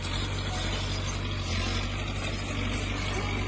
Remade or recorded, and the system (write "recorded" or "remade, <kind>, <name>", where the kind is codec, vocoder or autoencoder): recorded